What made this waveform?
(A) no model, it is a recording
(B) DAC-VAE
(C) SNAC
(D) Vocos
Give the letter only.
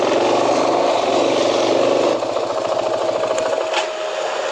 A